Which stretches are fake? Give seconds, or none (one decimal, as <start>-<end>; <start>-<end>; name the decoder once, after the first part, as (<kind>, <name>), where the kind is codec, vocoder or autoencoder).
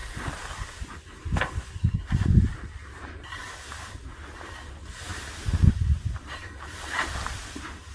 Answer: none